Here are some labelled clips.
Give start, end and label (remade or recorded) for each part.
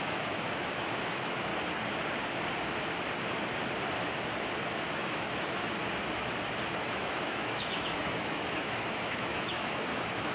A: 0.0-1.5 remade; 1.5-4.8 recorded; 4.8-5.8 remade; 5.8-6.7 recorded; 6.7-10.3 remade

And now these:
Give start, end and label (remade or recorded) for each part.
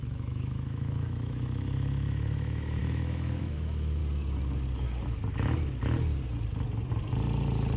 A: 0.0-4.0 remade; 4.0-7.8 recorded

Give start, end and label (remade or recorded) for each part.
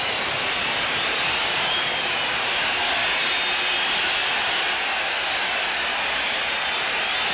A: 0.0-7.3 recorded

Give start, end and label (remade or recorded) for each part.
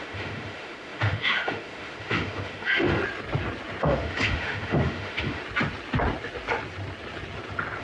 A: 0.0-3.0 remade; 3.0-3.8 recorded; 3.8-5.4 remade; 5.4-7.8 recorded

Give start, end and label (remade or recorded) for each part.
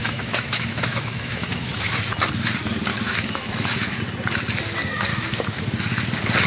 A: 0.0-1.9 remade; 1.9-2.9 recorded; 2.9-4.0 remade; 4.0-5.1 recorded; 5.1-5.6 remade; 5.6-6.5 recorded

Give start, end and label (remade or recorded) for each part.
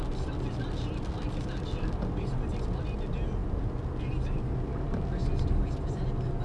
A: 0.0-6.4 recorded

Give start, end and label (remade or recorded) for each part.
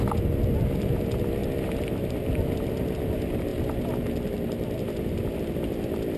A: 0.0-6.2 recorded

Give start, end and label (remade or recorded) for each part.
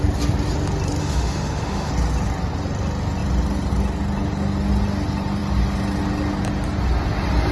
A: 0.0-1.0 recorded; 1.0-1.9 remade; 1.9-7.5 recorded